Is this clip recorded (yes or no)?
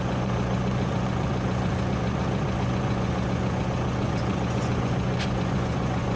no